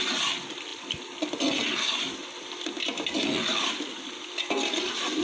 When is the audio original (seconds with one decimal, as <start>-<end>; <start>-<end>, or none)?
0.0-5.2